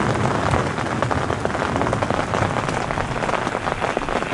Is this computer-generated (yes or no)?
no